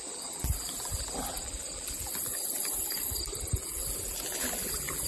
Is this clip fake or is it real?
fake